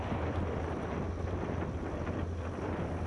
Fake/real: fake